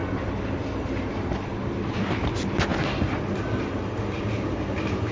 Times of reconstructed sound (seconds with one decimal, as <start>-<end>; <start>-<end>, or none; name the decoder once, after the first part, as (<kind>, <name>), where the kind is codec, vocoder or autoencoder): 0.0-1.8 (vocoder, BigVGAN v2)